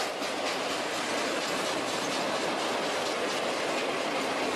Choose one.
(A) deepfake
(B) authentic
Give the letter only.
B